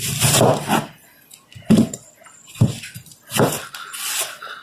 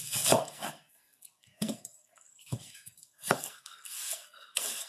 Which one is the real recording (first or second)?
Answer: first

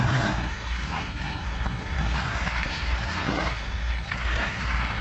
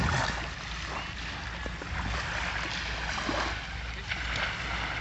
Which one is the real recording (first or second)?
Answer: second